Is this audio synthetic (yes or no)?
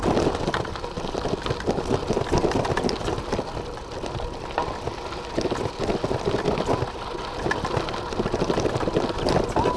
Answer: no